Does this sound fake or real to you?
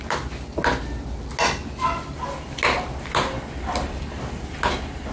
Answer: real